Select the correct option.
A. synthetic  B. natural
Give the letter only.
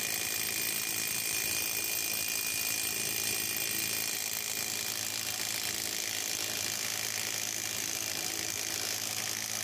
B